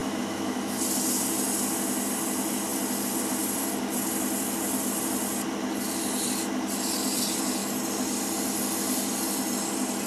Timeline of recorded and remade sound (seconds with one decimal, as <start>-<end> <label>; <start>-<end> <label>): 0.0-0.8 remade; 0.8-10.1 recorded